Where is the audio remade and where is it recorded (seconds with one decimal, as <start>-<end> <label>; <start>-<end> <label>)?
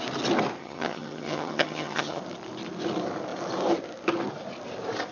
0.0-0.6 recorded; 0.6-2.2 remade; 2.2-5.1 recorded